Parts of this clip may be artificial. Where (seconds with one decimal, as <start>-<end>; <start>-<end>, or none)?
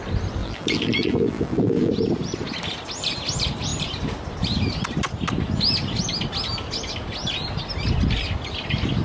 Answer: 0.4-1.9